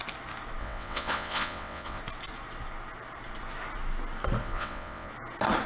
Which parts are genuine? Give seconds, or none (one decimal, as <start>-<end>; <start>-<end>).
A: 0.0-0.6; 2.0-4.4; 5.1-5.7